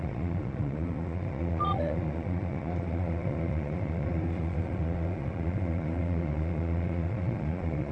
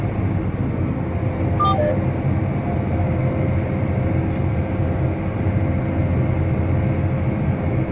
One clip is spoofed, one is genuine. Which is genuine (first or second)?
second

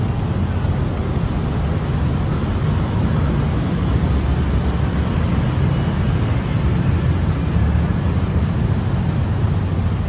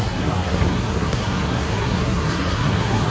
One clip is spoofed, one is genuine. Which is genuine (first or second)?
first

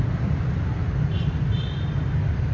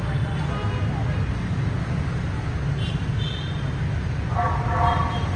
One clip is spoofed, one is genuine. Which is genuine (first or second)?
second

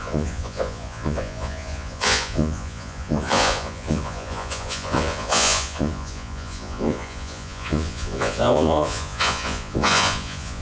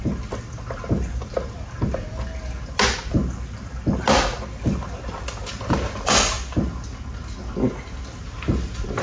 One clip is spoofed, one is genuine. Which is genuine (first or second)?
second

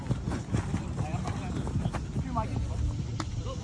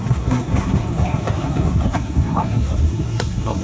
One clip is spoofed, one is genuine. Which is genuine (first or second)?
first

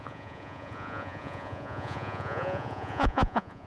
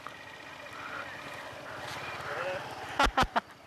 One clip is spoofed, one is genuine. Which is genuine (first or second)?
second